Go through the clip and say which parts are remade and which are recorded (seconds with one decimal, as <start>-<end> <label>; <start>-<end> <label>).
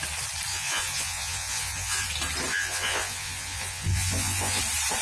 0.0-0.5 recorded; 0.5-2.1 remade; 2.1-2.5 recorded; 2.5-4.6 remade; 4.6-5.0 recorded